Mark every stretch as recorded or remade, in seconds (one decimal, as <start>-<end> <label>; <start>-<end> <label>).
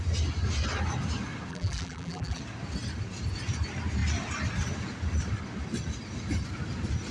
0.0-1.5 recorded; 1.5-2.4 remade; 2.4-7.1 recorded